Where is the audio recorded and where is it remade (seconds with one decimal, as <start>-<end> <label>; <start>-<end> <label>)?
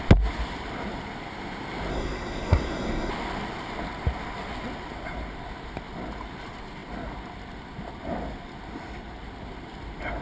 0.0-1.9 recorded; 1.9-3.1 remade; 3.1-10.2 recorded